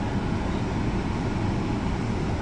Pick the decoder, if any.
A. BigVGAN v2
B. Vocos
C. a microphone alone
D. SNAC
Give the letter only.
C